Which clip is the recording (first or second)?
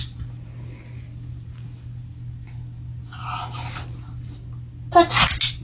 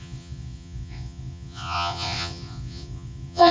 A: first